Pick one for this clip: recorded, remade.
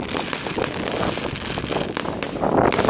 recorded